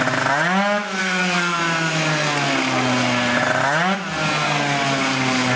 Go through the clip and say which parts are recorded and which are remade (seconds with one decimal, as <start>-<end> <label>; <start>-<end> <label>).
0.0-1.0 recorded; 1.0-1.6 remade; 1.6-5.6 recorded